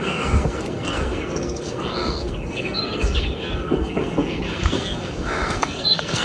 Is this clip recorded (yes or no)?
no